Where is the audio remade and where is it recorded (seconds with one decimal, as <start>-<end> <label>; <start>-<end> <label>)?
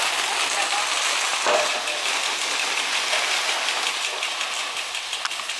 0.0-5.6 recorded